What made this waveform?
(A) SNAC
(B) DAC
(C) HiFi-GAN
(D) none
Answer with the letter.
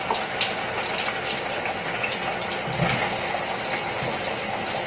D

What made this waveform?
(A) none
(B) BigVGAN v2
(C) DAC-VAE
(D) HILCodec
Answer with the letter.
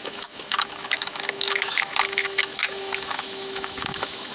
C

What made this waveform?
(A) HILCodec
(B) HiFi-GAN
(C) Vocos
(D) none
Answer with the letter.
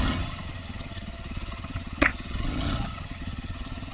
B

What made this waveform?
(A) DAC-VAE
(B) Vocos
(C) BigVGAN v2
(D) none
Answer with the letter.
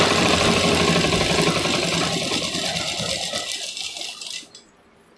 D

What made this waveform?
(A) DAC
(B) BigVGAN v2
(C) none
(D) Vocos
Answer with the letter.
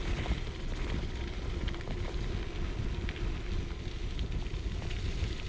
C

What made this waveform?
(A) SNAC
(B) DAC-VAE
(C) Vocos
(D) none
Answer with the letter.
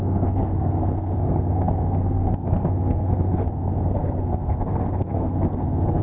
A